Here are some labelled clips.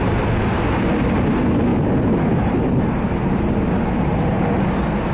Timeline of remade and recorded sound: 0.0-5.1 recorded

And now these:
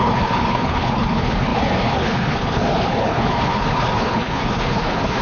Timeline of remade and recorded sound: 0.0-5.2 remade

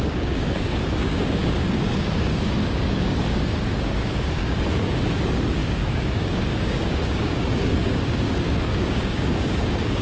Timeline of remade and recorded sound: 0.0-10.0 remade